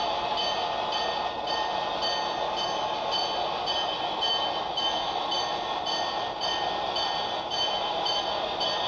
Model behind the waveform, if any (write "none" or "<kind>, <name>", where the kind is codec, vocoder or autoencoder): none